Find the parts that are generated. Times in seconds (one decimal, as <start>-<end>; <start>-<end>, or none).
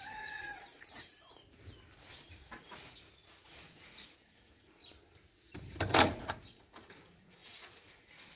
0.0-1.4; 2.3-4.8; 6.0-8.4